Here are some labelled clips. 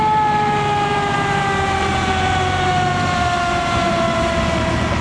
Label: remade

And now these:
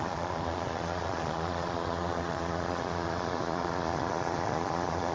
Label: remade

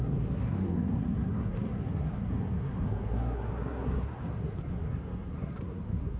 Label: remade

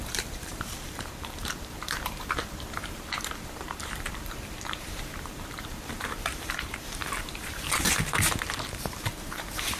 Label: remade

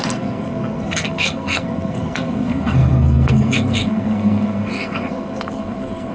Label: remade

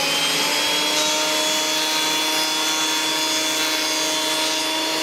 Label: recorded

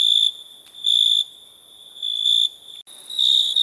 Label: recorded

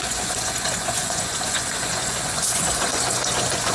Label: remade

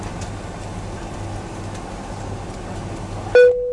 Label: recorded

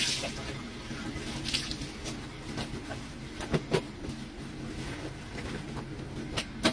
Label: recorded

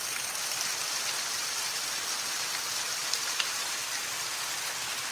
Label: recorded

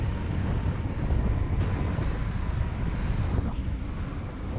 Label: recorded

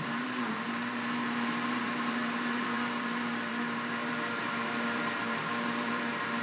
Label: remade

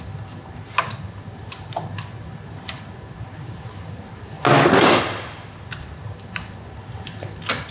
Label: recorded